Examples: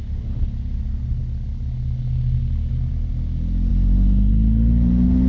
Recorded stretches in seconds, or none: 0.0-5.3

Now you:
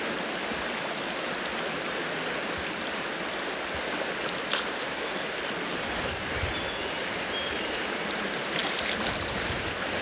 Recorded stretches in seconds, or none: 0.0-10.0

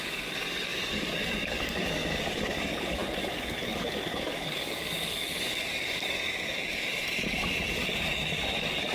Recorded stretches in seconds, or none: none

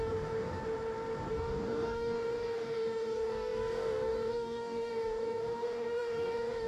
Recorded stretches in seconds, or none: 0.6-1.3

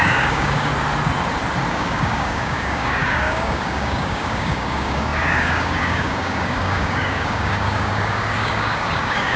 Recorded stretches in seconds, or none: 0.7-1.7

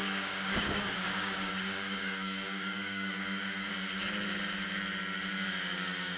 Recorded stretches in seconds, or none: 3.7-5.3

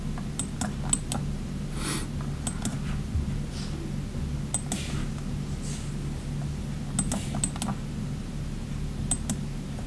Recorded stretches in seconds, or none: 0.0-9.9